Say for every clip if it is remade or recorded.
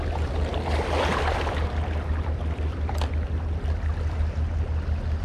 recorded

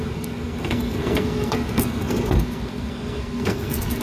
remade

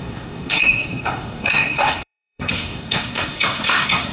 remade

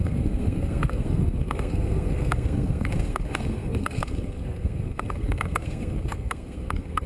remade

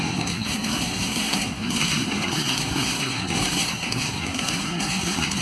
remade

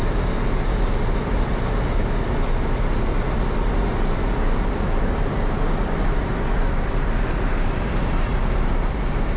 recorded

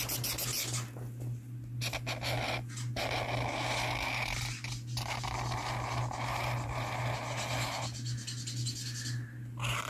recorded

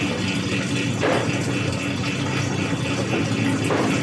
recorded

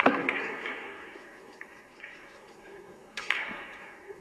remade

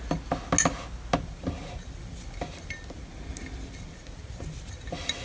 recorded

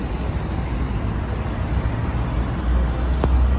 recorded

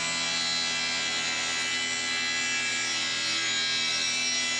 recorded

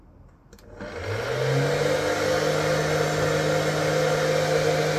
recorded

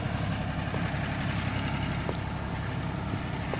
recorded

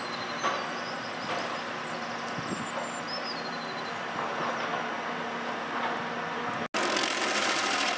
recorded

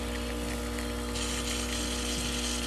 recorded